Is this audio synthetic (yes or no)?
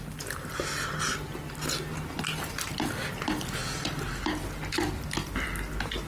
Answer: no